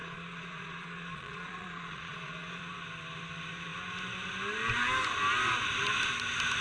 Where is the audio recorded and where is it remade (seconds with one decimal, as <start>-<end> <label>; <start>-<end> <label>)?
0.0-2.6 remade; 2.6-6.6 recorded